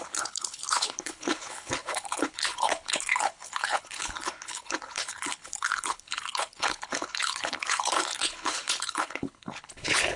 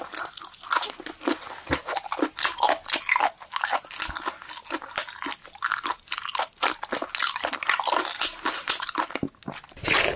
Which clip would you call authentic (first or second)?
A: second